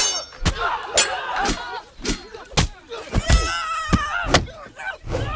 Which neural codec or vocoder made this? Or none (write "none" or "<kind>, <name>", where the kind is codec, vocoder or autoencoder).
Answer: none